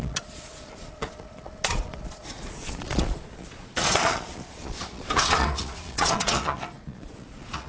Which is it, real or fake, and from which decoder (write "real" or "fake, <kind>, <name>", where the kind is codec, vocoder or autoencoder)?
fake, vocoder, Vocos